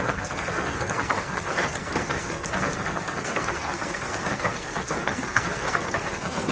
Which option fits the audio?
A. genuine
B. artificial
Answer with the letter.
B